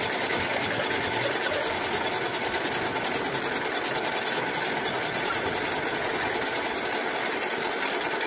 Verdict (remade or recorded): recorded